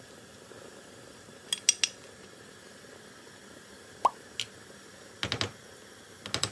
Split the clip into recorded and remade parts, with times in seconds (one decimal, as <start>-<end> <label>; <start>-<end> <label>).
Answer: 0.0-6.5 recorded